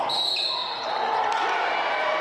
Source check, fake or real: real